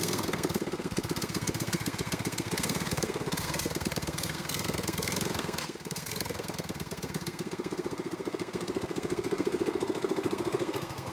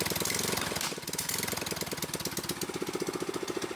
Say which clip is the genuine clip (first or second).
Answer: second